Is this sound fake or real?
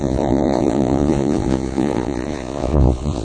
fake